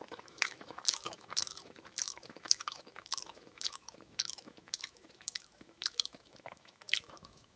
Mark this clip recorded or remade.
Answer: remade